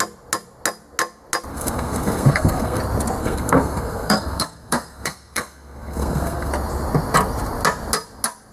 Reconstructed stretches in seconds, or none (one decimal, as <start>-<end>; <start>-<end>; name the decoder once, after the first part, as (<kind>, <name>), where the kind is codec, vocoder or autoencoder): 1.5-2.8 (codec, SNAC); 3.2-6.5